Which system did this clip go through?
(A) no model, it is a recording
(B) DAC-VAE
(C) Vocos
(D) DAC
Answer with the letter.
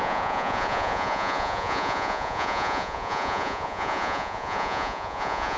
C